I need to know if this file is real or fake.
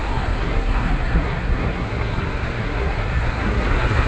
fake